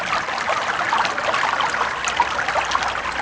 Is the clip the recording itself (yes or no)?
yes